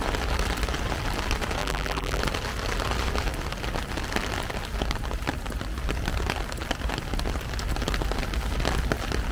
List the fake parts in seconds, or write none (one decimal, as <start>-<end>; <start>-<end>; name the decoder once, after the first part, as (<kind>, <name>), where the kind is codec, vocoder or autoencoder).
1.6-2.2 (vocoder, BigVGAN v2)